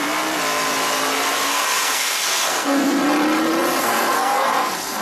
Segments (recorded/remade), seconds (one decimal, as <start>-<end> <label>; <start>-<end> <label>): 0.0-1.5 recorded; 1.5-3.0 remade; 3.0-3.8 recorded; 3.8-5.0 remade